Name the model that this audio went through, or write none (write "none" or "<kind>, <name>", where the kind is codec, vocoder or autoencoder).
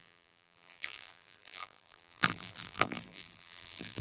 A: vocoder, BigVGAN v2